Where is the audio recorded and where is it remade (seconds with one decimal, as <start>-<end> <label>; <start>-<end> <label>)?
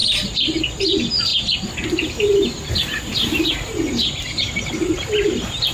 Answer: 0.0-5.7 recorded